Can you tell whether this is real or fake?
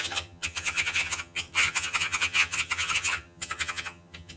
fake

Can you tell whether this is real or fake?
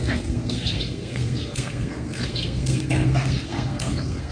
fake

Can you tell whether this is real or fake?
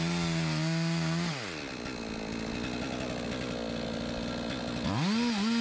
real